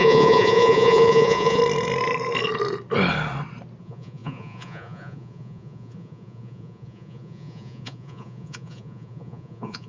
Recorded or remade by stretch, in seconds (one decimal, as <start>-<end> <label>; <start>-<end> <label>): 0.0-1.6 remade; 1.6-3.8 recorded; 3.8-9.9 remade

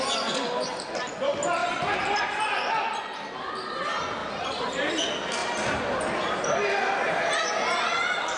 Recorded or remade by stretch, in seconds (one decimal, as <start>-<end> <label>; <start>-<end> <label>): 0.0-1.6 recorded; 1.6-2.4 remade; 2.4-4.2 recorded; 4.2-4.9 remade; 4.9-5.4 recorded; 5.4-6.0 remade; 6.0-8.4 recorded